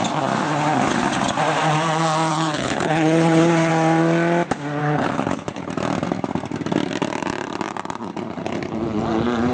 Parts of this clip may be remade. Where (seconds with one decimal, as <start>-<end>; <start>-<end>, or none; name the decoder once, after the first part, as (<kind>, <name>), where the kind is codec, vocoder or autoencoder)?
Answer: 2.3-3.7 (codec, HILCodec); 4.8-5.7